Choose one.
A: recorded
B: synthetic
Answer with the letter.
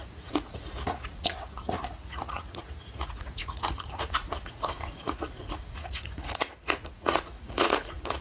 B